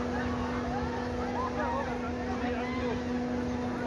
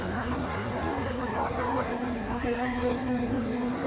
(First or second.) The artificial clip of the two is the second